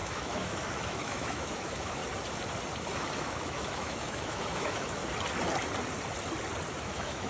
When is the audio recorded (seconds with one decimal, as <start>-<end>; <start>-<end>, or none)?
2.0-3.2; 5.0-6.8